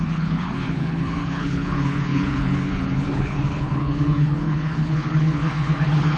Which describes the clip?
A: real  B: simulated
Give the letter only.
B